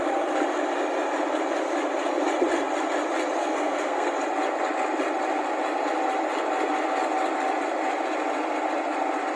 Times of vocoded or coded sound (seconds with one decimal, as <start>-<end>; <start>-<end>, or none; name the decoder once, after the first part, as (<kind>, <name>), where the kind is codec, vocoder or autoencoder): 3.4-4.1 (codec, SNAC)